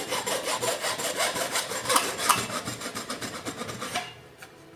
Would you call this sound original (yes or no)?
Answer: no